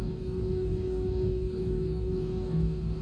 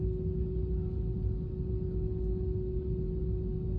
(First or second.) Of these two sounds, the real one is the second